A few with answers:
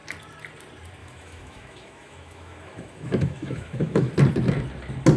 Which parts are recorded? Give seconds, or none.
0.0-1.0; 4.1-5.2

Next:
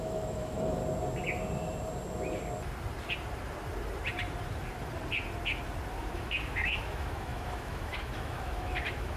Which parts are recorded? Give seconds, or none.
0.8-6.0